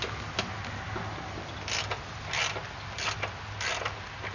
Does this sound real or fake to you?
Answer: real